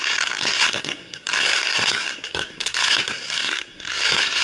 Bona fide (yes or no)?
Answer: no